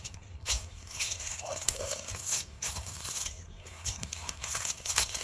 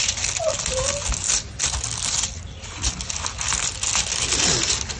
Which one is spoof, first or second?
first